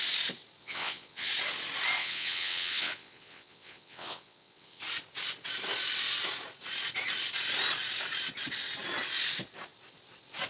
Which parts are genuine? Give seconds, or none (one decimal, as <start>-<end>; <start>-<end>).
0.0-0.6; 1.3-2.0; 4.8-10.5